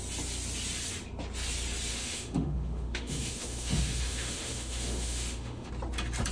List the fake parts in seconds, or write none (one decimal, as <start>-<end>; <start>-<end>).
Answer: 1.9-5.7

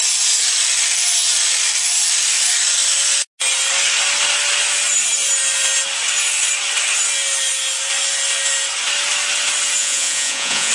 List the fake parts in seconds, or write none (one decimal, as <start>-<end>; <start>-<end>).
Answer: 9.8-10.7

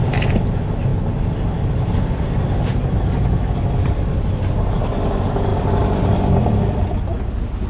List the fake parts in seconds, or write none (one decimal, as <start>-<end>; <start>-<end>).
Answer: none

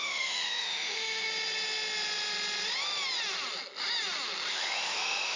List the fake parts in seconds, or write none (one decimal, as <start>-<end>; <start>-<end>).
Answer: 0.0-1.3; 4.5-5.4

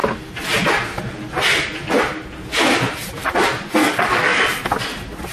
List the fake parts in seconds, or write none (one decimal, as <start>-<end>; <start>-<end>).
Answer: 3.8-4.4

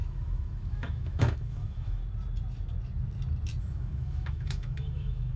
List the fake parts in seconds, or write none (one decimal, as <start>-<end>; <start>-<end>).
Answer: 0.0-2.0; 3.6-5.4